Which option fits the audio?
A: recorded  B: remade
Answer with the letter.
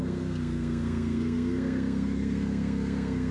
B